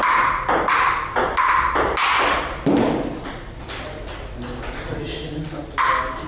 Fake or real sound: real